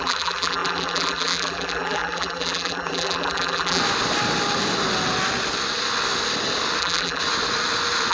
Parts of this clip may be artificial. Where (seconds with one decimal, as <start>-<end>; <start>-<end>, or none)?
0.0-3.8; 6.8-7.2